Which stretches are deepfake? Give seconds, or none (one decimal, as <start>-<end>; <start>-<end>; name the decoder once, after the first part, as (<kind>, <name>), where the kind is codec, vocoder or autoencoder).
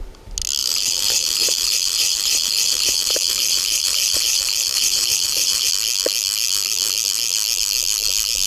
0.6-5.7 (vocoder, BigVGAN v2)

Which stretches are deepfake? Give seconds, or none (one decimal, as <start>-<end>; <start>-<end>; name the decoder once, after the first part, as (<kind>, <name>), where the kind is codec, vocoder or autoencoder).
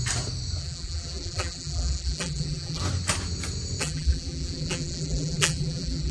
0.6-2.8 (vocoder, BigVGAN v2); 3.8-6.1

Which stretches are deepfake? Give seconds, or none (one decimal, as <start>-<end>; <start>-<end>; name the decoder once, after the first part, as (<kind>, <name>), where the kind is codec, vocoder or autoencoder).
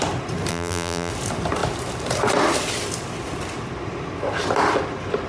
0.5-1.1 (vocoder, BigVGAN v2)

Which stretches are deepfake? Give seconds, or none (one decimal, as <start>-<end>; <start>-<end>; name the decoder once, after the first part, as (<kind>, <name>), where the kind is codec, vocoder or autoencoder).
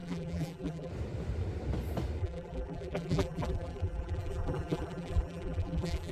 0.0-0.9 (vocoder, BigVGAN v2); 2.2-6.1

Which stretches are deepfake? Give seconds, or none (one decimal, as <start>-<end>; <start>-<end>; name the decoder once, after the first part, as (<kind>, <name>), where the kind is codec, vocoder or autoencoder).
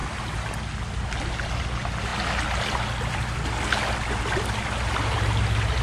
none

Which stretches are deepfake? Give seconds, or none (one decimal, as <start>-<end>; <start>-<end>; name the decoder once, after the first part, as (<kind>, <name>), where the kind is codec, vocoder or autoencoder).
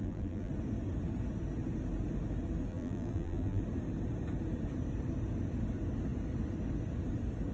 0.0-0.5 (vocoder, BigVGAN v2); 2.7-3.6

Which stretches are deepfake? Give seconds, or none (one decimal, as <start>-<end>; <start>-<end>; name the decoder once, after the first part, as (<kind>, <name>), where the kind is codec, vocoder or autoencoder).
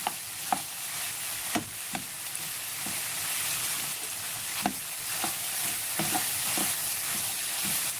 none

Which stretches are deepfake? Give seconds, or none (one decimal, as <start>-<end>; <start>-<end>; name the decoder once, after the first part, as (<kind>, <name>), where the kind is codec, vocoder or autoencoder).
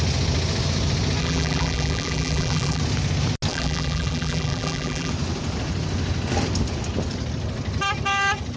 1.2-2.8 (vocoder, BigVGAN v2); 3.5-5.1